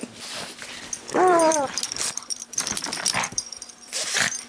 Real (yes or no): no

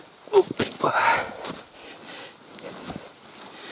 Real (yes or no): yes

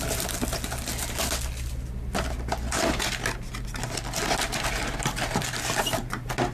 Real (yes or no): yes